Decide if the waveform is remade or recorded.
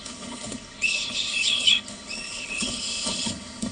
remade